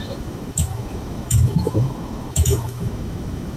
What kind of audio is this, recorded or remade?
remade